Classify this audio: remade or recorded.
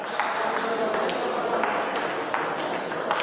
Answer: recorded